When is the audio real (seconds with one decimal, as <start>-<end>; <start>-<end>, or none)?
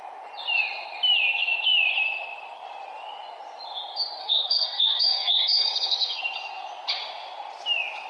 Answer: 0.0-4.2; 6.2-8.1